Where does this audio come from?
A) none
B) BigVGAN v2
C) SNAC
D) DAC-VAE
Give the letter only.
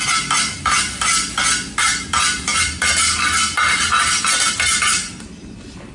A